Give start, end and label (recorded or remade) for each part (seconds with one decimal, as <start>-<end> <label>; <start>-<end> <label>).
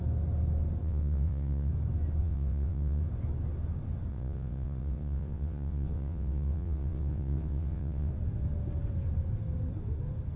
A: 0.0-0.8 recorded; 0.8-1.7 remade; 1.7-2.2 recorded; 2.2-3.0 remade; 3.0-4.1 recorded; 4.1-8.1 remade; 8.1-10.4 recorded